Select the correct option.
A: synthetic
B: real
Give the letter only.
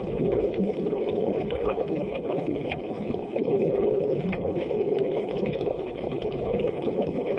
A